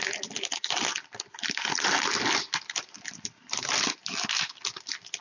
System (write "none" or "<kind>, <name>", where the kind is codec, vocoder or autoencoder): none